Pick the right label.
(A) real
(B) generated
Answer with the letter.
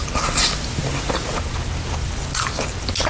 A